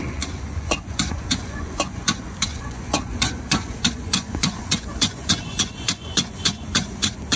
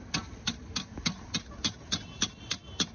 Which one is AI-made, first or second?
first